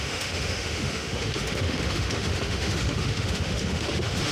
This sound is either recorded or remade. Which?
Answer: remade